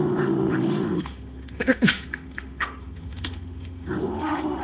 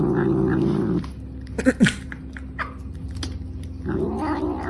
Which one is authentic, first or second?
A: second